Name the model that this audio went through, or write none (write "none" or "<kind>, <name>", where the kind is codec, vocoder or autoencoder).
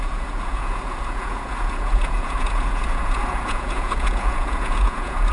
vocoder, Vocos